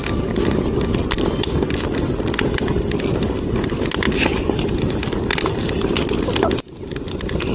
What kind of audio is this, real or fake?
real